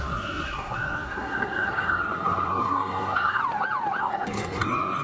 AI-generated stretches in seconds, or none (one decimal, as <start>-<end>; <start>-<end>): 0.0-3.4; 4.0-5.0